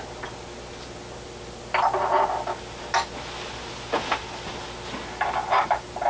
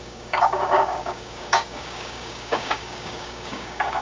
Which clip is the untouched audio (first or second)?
first